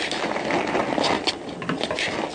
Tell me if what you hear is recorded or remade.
recorded